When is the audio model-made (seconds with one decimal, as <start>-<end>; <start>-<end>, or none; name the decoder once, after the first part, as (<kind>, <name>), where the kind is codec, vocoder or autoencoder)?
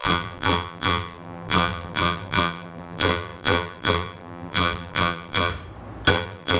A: 0.0-5.5 (vocoder, BigVGAN v2); 6.1-6.6